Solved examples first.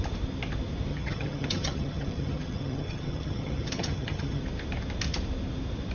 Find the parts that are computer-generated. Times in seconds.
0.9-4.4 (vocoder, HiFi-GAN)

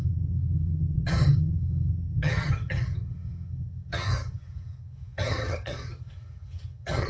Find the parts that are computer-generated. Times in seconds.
0.0-7.1 (vocoder, HiFi-GAN)

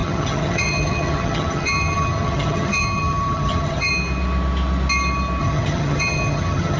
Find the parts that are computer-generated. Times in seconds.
0.0-3.9 (vocoder, HiFi-GAN); 5.4-6.8

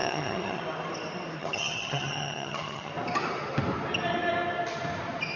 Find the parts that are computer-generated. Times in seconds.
0.0-0.6 (vocoder, HiFi-GAN); 1.4-2.9

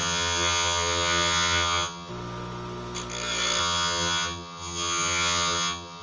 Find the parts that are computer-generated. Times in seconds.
0.0-2.1 (vocoder, HiFi-GAN); 3.6-6.0